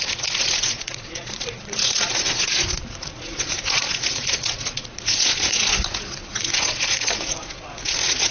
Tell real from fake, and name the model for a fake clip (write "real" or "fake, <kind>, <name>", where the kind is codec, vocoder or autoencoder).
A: fake, vocoder, Vocos